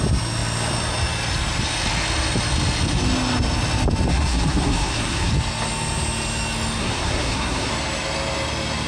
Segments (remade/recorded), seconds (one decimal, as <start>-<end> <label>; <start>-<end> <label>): 0.0-4.1 recorded; 4.1-5.3 remade; 5.3-6.8 recorded; 6.8-7.7 remade; 7.7-8.9 recorded